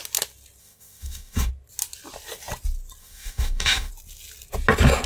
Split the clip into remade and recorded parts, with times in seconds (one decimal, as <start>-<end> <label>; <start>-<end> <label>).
0.0-0.6 recorded; 0.6-1.5 remade; 1.5-3.0 recorded; 3.0-3.9 remade; 3.9-5.1 recorded